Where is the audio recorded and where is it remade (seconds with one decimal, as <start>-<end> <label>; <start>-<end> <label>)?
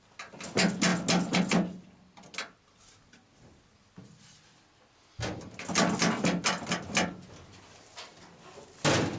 0.0-9.2 recorded